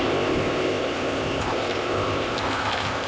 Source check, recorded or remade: remade